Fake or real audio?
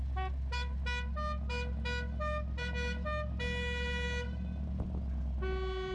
real